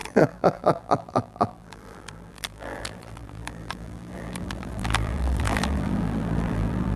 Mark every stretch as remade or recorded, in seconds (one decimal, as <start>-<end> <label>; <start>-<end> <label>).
0.0-7.0 remade